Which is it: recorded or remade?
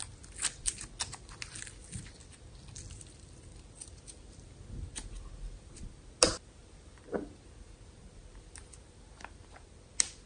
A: recorded